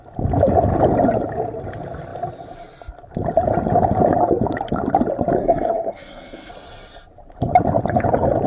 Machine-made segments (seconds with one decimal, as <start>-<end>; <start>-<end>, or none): 5.4-6.5